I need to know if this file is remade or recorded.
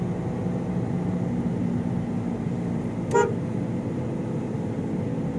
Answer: recorded